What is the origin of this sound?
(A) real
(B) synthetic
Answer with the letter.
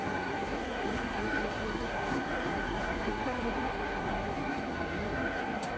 B